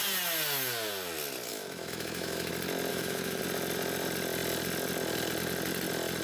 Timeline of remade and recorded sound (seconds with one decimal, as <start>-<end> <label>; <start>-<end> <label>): 0.0-1.5 recorded; 1.5-2.5 remade; 2.5-2.9 recorded; 2.9-3.4 remade; 3.4-6.2 recorded